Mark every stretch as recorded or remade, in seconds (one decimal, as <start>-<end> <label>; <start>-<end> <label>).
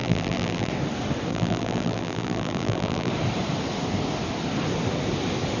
0.0-0.7 remade; 0.7-1.3 recorded; 1.3-3.1 remade; 3.1-5.6 recorded